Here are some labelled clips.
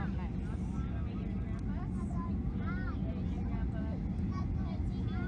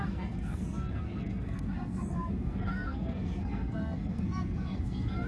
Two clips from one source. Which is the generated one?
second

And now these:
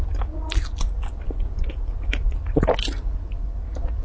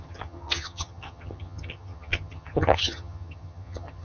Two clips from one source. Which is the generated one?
second